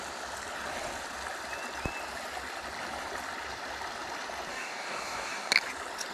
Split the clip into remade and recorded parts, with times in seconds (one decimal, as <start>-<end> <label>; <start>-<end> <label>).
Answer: 0.0-4.5 recorded; 4.5-5.5 remade; 5.5-6.1 recorded